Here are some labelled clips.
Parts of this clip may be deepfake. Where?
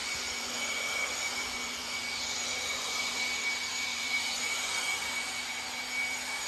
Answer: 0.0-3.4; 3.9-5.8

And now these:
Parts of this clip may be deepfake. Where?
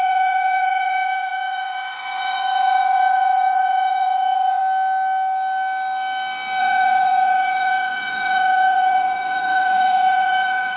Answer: 0.0-4.6; 6.6-10.8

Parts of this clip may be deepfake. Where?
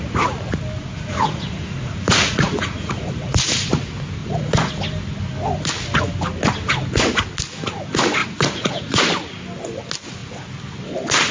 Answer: 0.8-3.6; 4.2-4.7; 8.2-9.0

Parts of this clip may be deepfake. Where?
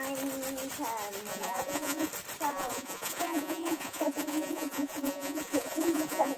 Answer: 1.3-2.1; 2.5-6.4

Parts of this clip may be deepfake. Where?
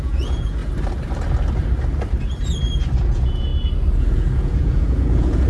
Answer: 0.0-0.6; 3.0-3.5; 4.0-5.5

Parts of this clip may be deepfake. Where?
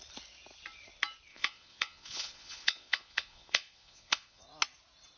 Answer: 1.3-4.4